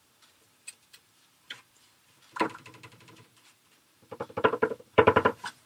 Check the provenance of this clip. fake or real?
fake